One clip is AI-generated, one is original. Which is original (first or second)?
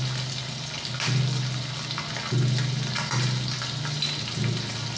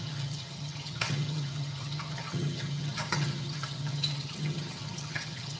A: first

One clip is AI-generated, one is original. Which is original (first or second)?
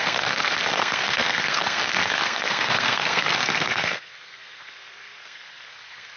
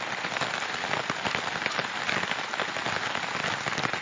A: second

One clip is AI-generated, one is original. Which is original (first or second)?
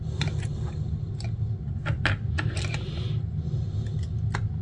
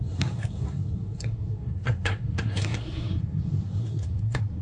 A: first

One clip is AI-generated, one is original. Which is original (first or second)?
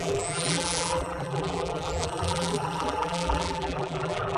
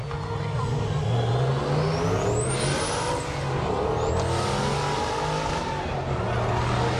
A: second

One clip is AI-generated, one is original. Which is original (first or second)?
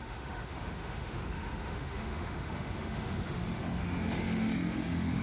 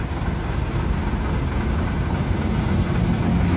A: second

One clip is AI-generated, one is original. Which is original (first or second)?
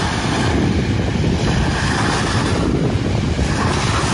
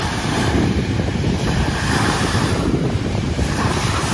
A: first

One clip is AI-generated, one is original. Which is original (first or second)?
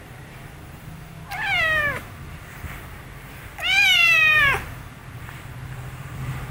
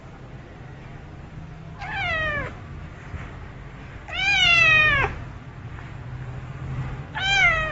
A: second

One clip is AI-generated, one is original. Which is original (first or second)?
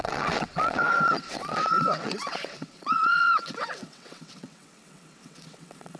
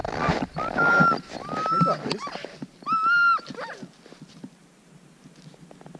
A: second